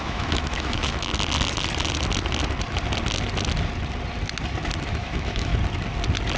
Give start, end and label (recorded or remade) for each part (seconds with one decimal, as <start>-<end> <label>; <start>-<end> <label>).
0.0-1.1 remade; 1.1-4.9 recorded; 4.9-5.5 remade; 5.5-6.4 recorded